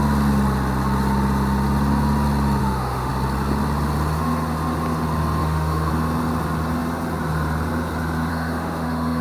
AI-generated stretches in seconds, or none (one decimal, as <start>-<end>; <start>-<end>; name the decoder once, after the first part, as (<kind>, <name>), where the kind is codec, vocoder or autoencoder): 2.6-3.1 (autoencoder, DAC-VAE); 5.4-5.9; 8.3-9.2

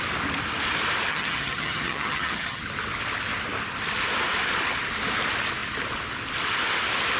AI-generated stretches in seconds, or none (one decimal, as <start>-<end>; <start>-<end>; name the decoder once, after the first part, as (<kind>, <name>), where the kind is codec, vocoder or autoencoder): 1.1-2.6 (vocoder, HiFi-GAN)

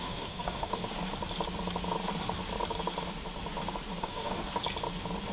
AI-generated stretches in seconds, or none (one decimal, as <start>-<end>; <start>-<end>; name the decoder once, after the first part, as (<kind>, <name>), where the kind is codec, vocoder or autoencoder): 0.0-0.8 (codec, DAC); 4.0-4.4

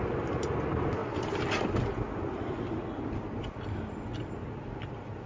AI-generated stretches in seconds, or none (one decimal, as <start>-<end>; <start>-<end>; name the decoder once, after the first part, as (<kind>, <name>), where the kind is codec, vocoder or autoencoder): none